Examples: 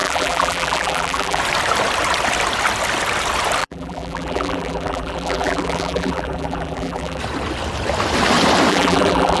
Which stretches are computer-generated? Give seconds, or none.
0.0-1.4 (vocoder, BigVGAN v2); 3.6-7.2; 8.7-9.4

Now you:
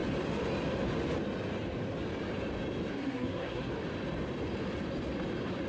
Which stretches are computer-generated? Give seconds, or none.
2.9-3.7 (codec, SNAC)

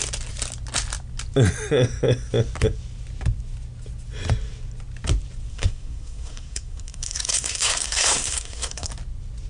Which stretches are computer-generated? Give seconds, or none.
5.5-8.9 (codec, SNAC)